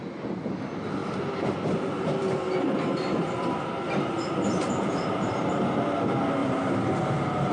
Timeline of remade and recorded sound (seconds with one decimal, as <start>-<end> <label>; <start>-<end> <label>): 0.0-1.0 recorded; 1.0-5.5 remade; 5.5-6.4 recorded; 6.4-7.1 remade; 7.1-7.5 recorded